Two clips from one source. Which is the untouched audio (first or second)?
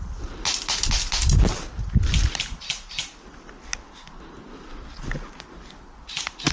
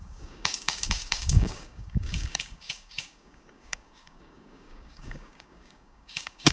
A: first